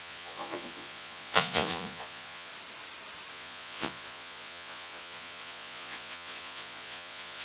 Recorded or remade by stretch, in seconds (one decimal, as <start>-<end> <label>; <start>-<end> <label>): 0.0-2.5 remade; 2.5-3.3 recorded; 3.3-7.4 remade